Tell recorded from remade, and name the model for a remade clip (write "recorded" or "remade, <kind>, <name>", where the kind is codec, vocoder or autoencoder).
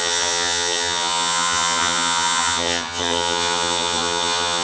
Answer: remade, vocoder, HiFi-GAN